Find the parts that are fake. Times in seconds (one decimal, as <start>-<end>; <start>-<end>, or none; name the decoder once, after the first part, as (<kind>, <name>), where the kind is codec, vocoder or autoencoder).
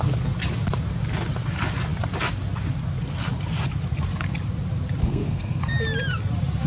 5.0-5.6 (codec, SNAC)